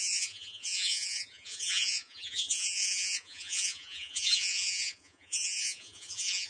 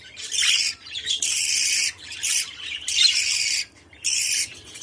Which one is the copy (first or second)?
first